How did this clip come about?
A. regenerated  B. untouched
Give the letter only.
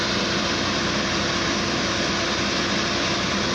B